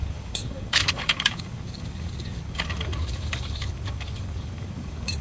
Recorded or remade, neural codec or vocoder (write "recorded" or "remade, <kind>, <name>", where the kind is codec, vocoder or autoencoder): remade, codec, DAC